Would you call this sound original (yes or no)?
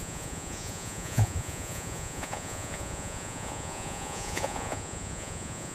no